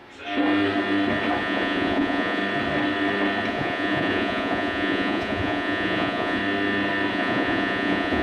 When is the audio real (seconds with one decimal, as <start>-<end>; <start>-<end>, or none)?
0.0-1.4; 2.4-3.5; 6.4-7.1